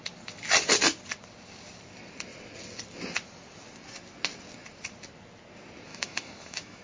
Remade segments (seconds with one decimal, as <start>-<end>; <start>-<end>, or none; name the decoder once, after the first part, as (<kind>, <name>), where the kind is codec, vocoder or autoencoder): 5.9-6.8 (autoencoder, DAC-VAE)